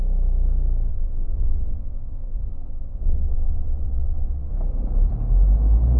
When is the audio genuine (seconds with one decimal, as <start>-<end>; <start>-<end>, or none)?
0.0-0.9; 4.5-6.0